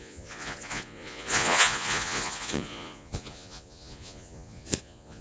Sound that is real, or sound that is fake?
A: fake